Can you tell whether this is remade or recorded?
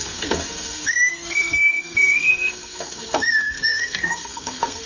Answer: remade